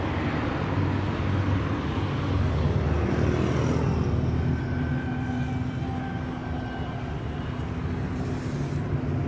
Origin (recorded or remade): recorded